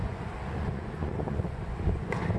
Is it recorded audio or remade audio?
remade